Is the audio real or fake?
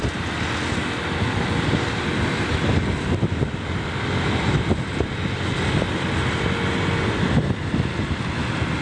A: real